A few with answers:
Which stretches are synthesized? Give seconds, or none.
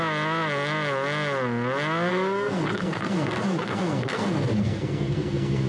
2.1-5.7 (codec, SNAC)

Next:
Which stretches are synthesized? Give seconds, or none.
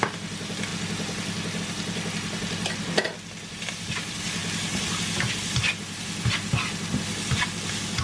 none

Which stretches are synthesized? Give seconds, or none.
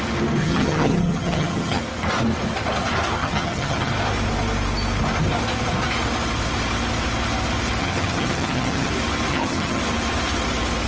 0.4-1.8 (vocoder, HiFi-GAN); 3.2-3.9; 7.8-8.9; 9.3-9.8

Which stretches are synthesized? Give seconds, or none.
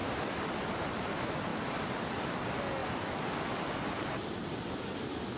0.0-0.7 (vocoder, BigVGAN v2); 1.5-2.2; 2.8-4.1